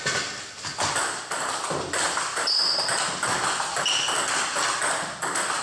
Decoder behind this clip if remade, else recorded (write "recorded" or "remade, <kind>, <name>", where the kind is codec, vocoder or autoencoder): recorded